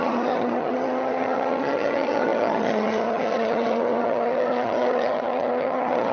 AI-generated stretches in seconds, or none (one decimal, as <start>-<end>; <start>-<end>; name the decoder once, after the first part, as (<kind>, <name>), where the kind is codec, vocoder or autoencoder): 0.0-6.1 (vocoder, HiFi-GAN)